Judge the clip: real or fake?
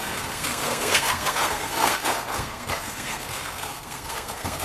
fake